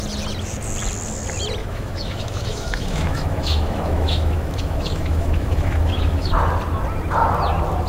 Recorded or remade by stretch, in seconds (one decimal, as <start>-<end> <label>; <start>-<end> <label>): 0.0-1.6 recorded; 1.6-6.3 remade; 6.3-7.9 recorded